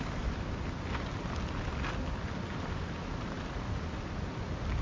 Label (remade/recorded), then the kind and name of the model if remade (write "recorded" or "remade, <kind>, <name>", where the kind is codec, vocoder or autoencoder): recorded